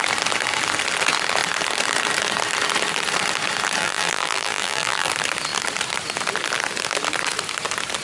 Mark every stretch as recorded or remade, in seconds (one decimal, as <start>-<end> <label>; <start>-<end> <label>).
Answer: 0.0-3.8 recorded; 3.8-5.1 remade; 5.1-8.0 recorded